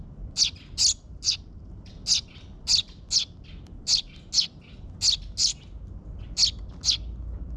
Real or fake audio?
real